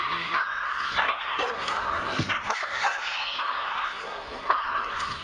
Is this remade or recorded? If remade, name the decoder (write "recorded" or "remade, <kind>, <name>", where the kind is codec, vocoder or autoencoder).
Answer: remade, codec, SNAC